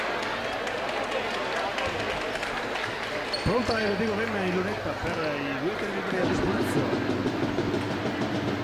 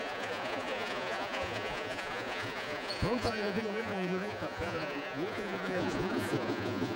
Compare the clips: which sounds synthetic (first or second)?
second